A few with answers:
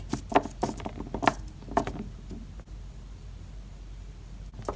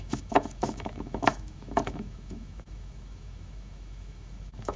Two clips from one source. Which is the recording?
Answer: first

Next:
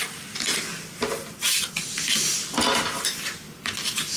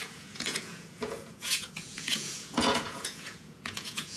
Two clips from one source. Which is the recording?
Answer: first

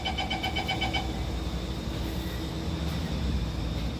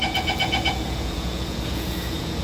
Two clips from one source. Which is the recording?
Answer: first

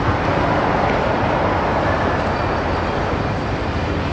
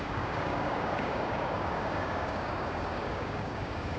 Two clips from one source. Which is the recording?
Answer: first